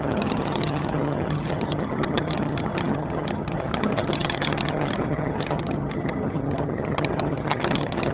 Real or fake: fake